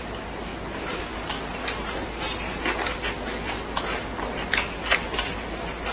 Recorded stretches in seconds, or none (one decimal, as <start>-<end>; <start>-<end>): 0.0-5.9

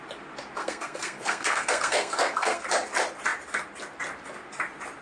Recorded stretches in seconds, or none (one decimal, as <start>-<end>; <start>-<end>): 0.0-0.6; 2.6-5.0

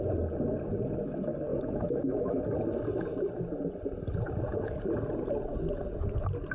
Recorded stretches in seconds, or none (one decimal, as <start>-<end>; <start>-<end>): 0.0-1.5; 2.4-6.5

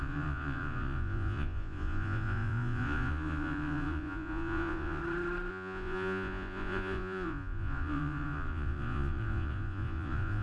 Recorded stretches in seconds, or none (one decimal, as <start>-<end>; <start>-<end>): 5.0-5.5

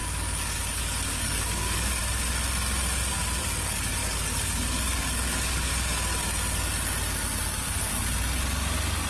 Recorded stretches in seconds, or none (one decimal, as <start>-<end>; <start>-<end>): 2.0-3.4; 5.7-9.1

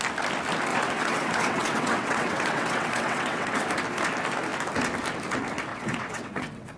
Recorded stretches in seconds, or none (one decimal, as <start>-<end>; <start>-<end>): 0.0-0.7; 3.7-5.7

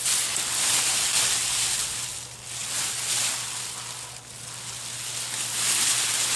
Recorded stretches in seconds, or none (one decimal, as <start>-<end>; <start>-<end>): 0.0-6.4

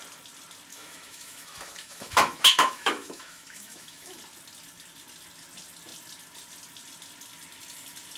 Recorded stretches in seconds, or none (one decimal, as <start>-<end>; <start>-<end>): 0.0-0.7; 4.2-8.2